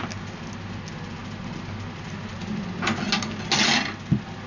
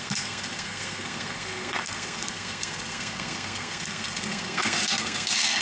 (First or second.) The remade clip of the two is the second